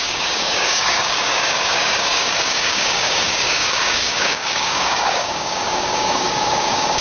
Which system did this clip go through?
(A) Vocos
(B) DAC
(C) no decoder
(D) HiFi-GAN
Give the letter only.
B